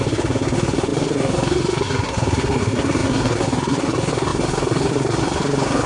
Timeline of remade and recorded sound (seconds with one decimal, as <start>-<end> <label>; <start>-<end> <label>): 0.0-5.9 remade